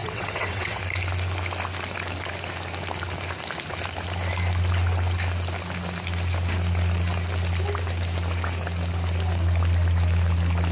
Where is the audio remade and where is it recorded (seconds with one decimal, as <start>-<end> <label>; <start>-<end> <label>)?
0.0-0.8 remade; 0.8-10.7 recorded

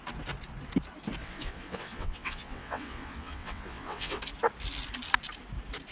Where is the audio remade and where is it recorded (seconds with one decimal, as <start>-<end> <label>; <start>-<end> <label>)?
0.0-1.2 recorded; 1.2-4.2 remade; 4.2-5.9 recorded

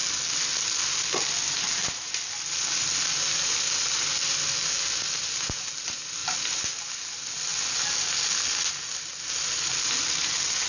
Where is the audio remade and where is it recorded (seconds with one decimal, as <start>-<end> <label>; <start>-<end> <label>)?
0.0-10.7 recorded

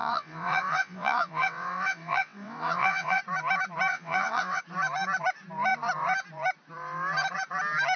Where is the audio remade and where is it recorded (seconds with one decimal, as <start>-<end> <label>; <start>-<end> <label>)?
0.0-3.2 remade; 3.2-3.9 recorded; 3.9-4.6 remade; 4.6-8.0 recorded

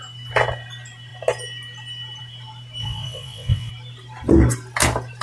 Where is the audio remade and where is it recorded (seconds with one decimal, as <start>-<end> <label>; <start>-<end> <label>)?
0.0-2.8 recorded; 2.8-3.7 remade; 3.7-5.2 recorded

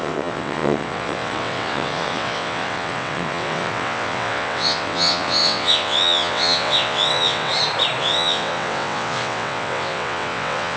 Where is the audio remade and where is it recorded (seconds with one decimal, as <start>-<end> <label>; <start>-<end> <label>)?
0.0-7.5 remade; 7.5-8.0 recorded; 8.0-10.8 remade

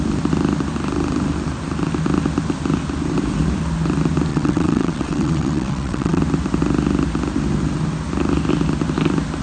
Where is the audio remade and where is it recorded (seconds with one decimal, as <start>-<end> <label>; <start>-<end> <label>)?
0.0-4.3 recorded; 4.3-6.2 remade; 6.2-9.4 recorded